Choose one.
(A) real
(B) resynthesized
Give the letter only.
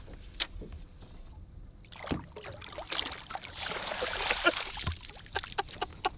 A